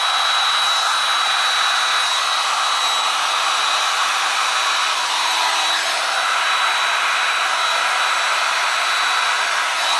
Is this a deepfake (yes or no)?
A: no